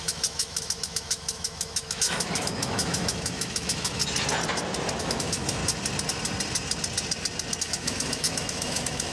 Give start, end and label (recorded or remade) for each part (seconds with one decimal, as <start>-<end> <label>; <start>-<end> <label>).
0.0-4.0 remade; 4.0-5.0 recorded; 5.0-5.6 remade; 5.6-7.6 recorded; 7.6-9.1 remade